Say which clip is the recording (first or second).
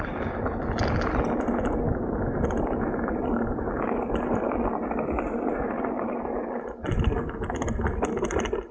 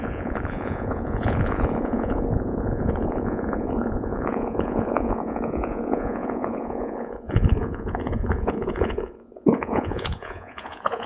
first